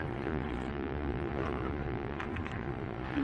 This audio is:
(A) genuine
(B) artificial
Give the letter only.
B